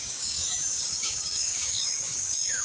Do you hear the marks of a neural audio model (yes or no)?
yes